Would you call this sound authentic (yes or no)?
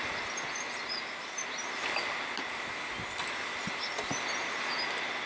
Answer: yes